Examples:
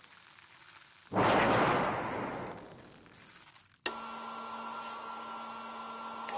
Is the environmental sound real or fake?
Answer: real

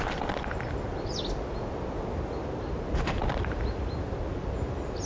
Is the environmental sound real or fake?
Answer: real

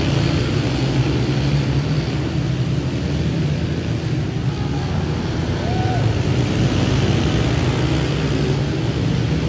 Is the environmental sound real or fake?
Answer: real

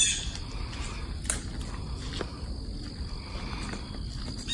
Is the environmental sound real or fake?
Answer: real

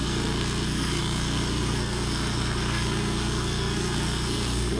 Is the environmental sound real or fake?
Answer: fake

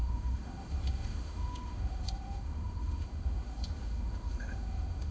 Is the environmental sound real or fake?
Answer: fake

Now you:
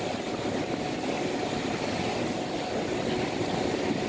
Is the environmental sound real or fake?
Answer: real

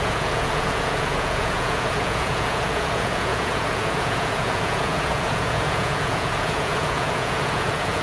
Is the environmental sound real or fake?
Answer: fake